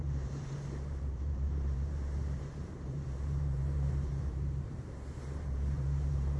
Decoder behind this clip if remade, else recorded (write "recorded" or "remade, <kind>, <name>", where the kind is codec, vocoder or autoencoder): remade, vocoder, BigVGAN v2